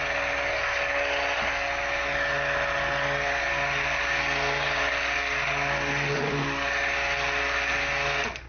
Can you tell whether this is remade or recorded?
recorded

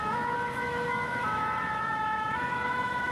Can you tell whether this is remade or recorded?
remade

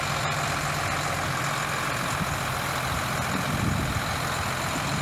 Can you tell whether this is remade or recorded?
recorded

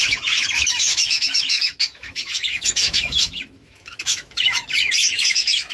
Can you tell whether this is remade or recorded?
remade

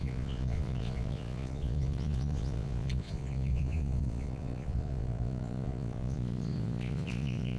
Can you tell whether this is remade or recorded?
remade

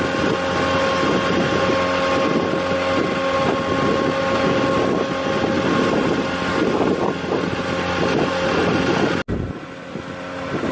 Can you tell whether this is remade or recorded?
recorded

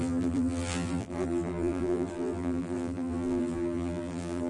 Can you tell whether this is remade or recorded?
remade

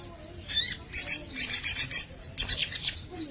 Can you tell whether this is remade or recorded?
recorded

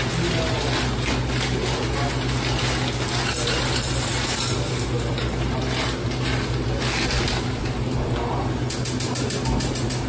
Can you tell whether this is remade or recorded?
recorded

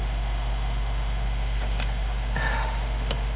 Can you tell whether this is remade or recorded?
remade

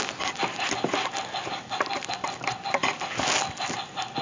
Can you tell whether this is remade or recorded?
recorded